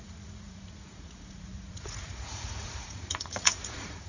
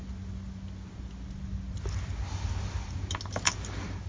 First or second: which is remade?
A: first